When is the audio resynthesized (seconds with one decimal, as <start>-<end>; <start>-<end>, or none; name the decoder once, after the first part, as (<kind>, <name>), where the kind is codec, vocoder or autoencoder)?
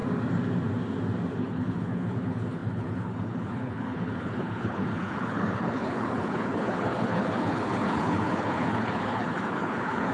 1.4-10.1 (codec, HILCodec)